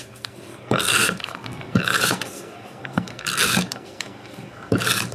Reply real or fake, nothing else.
fake